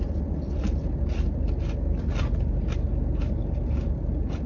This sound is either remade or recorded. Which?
recorded